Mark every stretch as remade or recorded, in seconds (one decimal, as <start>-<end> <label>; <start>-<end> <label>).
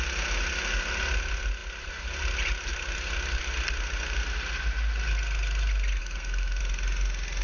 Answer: 0.0-6.0 recorded; 6.0-6.6 remade; 6.6-7.4 recorded